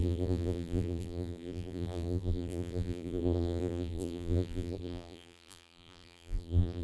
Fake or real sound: fake